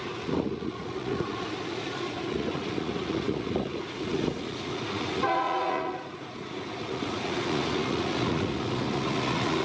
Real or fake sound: fake